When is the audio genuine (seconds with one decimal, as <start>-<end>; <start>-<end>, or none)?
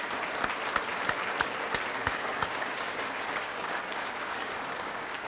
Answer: 0.0-2.0